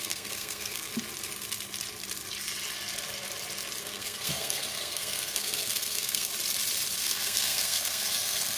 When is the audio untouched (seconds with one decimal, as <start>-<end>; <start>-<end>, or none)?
0.9-3.8; 6.3-7.0